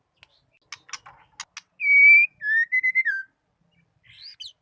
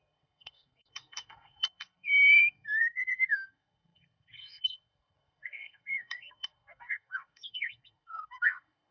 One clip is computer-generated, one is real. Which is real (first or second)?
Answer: first